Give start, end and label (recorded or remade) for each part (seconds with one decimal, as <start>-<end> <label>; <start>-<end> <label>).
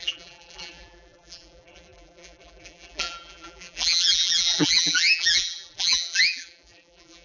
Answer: 0.0-7.2 remade